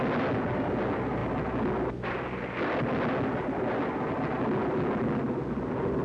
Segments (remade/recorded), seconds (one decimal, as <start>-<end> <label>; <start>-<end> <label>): 0.0-6.0 recorded